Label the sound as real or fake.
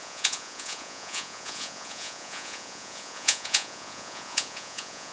fake